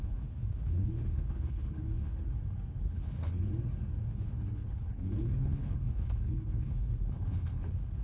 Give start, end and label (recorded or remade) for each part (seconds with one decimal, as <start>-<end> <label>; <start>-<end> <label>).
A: 0.0-2.2 remade; 2.2-2.8 recorded; 2.8-3.5 remade; 3.5-4.1 recorded; 4.1-8.0 remade